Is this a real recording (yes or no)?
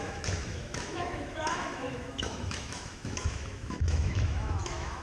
no